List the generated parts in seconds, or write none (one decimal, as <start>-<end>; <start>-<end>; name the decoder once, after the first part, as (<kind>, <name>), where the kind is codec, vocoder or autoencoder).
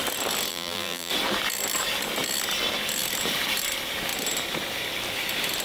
0.5-1.1 (vocoder, BigVGAN v2)